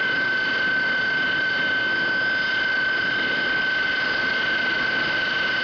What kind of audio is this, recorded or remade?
recorded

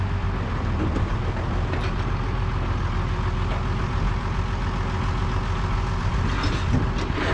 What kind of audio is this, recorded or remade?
recorded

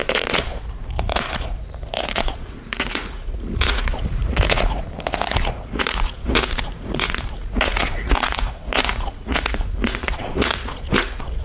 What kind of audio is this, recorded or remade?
remade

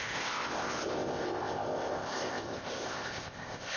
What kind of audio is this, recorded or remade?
remade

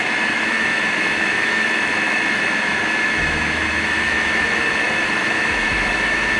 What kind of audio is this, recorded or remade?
remade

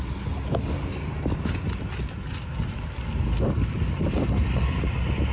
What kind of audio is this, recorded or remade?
recorded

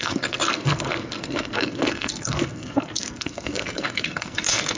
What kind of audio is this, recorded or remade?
remade